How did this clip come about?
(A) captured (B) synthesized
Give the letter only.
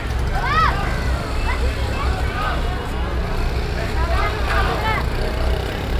A